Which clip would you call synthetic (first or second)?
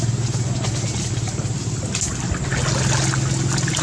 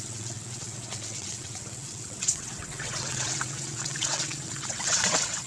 second